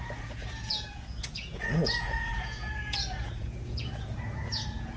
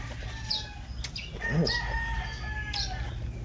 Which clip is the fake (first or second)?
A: first